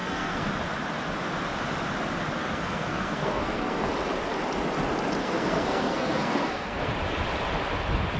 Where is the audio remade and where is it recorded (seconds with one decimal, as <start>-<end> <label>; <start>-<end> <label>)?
0.0-0.5 remade; 0.5-2.4 recorded; 2.4-3.9 remade; 3.9-5.2 recorded; 5.2-6.9 remade; 6.9-8.2 recorded